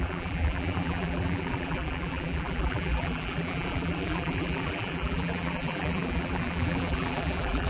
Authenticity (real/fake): fake